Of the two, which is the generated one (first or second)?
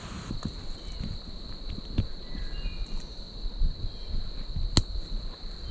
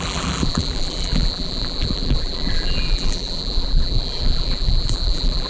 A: second